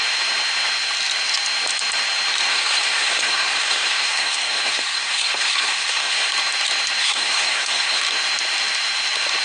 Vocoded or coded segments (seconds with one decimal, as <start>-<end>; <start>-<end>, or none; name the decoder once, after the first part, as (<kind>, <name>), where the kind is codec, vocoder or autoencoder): 2.5-6.3 (codec, SNAC); 7.0-8.0